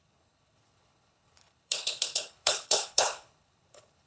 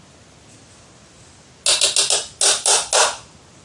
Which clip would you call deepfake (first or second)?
first